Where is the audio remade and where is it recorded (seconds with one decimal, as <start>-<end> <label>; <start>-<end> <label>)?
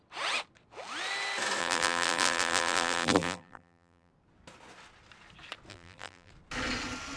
0.0-1.6 recorded; 1.6-4.1 remade; 4.1-5.7 recorded; 5.7-6.3 remade; 6.3-7.2 recorded